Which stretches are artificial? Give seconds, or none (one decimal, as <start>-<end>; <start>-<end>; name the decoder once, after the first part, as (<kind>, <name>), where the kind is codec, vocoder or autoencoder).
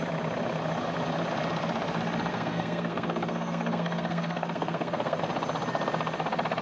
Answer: 2.3-5.2 (codec, SNAC)